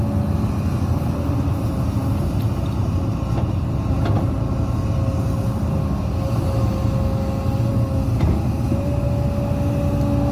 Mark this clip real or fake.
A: real